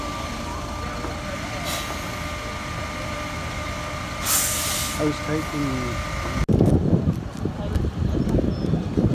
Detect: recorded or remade recorded